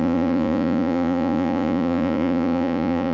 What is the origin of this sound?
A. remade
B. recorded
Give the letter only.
A